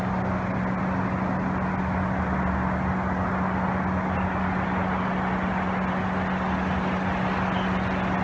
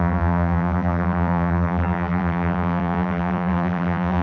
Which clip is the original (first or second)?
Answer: first